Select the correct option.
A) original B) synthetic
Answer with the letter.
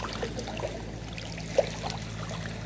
A